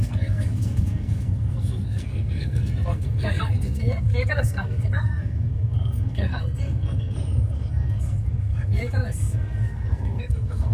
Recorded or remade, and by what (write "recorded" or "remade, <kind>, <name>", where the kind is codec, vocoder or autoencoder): remade, codec, SNAC